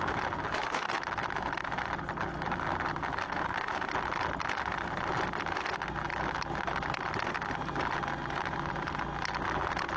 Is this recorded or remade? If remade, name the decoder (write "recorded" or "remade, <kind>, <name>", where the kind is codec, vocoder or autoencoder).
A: recorded